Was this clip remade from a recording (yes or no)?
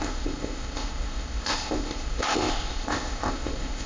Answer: yes